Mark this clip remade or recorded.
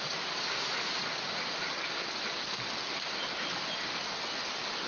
recorded